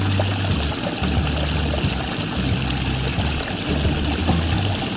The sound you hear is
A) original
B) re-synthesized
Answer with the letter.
A